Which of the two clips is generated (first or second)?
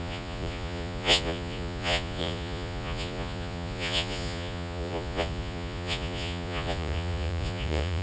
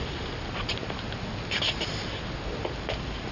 first